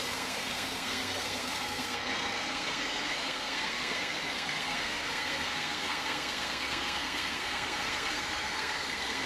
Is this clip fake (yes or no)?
yes